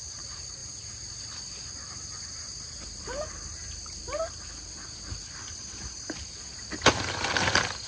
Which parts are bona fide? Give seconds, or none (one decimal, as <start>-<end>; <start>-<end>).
0.0-7.9